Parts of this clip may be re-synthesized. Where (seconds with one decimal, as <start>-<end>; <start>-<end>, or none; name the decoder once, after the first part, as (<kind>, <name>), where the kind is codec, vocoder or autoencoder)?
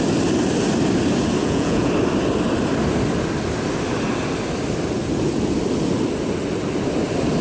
1.4-1.9 (vocoder, Vocos)